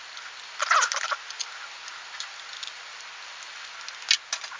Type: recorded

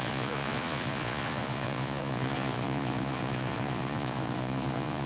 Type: remade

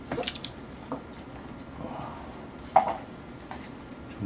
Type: recorded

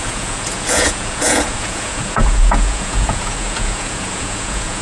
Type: remade